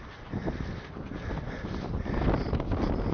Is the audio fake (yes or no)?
no